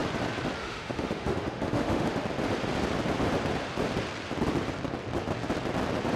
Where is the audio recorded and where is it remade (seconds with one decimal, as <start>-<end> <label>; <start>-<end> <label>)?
0.0-0.6 recorded; 0.6-2.2 remade; 2.2-6.2 recorded